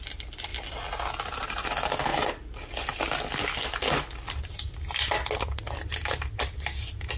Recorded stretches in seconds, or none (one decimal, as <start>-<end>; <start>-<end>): 0.0-7.2